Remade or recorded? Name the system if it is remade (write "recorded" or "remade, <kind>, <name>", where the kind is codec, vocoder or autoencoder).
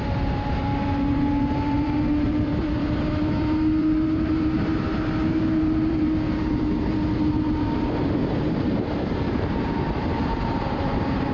remade, vocoder, BigVGAN v2